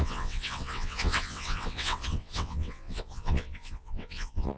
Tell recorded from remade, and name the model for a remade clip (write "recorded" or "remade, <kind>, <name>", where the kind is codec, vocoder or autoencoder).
remade, vocoder, WaveNeXt